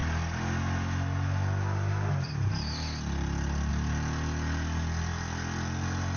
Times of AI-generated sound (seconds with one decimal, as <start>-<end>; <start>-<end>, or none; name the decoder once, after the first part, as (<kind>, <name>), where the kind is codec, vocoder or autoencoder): none

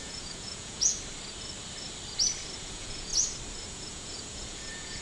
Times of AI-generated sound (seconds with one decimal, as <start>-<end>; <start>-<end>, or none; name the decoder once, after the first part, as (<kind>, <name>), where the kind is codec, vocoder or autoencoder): 0.0-0.9 (vocoder, Vocos); 2.6-3.1; 3.7-5.0

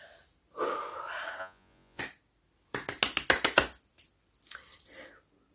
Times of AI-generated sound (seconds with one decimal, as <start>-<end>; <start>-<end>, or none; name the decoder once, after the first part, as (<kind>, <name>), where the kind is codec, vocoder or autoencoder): 1.4-2.0 (vocoder, Vocos)

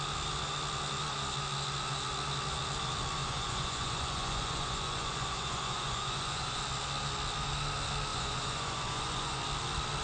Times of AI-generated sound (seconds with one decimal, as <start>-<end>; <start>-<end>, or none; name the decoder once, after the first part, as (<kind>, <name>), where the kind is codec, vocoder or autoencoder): 3.2-6.6 (vocoder, Vocos); 8.1-9.4

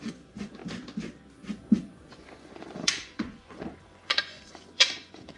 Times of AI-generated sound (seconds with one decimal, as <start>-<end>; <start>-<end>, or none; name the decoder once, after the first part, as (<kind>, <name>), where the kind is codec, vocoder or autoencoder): 0.0-0.6 (vocoder, Vocos); 1.7-5.4